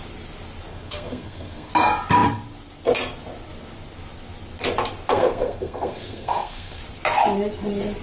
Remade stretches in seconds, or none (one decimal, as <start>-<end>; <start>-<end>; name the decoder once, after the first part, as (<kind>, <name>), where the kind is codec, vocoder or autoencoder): 0.7-1.7 (codec, SNAC); 5.1-6.8